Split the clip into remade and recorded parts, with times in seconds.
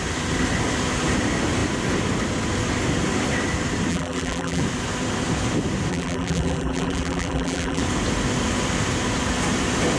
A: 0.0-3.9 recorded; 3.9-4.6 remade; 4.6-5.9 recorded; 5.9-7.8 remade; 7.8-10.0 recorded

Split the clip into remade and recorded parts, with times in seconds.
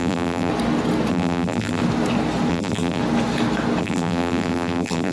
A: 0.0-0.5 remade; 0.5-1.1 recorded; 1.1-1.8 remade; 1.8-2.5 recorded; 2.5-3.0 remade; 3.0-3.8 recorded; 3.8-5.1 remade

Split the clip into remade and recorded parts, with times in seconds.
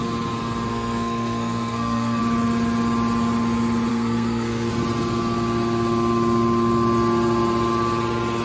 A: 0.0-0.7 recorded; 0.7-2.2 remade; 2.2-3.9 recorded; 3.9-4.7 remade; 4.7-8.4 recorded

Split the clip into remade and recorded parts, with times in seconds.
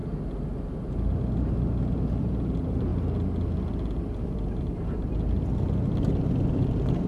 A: 0.0-2.2 recorded; 2.2-2.9 remade; 2.9-4.6 recorded; 4.6-5.1 remade; 5.1-6.5 recorded; 6.5-7.1 remade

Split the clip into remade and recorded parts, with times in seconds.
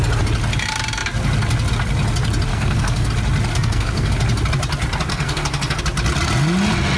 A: 0.0-2.5 recorded; 2.5-3.1 remade; 3.1-3.5 recorded; 3.5-4.1 remade; 4.1-5.1 recorded; 5.1-5.8 remade; 5.8-7.0 recorded